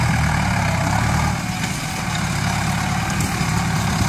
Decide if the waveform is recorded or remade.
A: recorded